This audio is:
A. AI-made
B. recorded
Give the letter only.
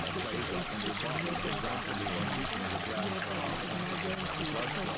B